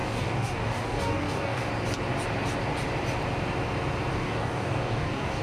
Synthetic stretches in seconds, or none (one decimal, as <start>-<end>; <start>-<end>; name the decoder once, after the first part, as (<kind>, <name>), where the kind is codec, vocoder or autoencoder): 0.0-1.7 (codec, DAC); 4.1-5.4